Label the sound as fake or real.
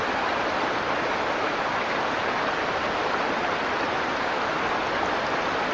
real